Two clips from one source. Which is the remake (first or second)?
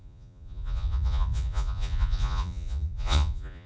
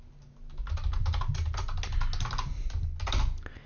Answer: first